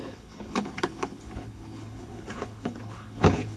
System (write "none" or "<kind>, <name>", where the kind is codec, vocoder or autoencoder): codec, HILCodec